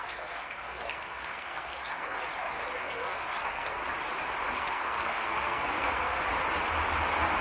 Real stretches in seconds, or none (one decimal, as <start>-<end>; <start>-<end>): 2.2-2.8; 3.8-4.5; 6.2-7.4